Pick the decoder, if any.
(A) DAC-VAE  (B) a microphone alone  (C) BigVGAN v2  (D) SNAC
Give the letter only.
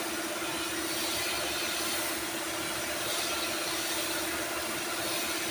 B